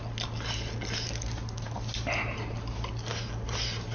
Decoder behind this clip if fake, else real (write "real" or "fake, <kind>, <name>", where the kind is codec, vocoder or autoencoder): real